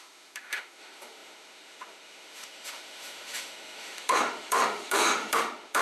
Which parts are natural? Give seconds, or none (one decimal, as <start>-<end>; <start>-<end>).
none